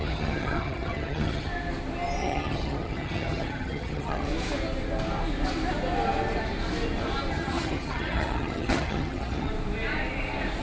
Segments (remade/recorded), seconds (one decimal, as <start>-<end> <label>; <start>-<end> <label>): 0.0-1.5 remade; 1.5-2.2 recorded; 2.2-4.3 remade; 4.3-7.3 recorded; 7.3-9.5 remade; 9.5-10.6 recorded